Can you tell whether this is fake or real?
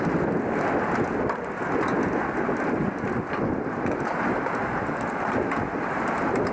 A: real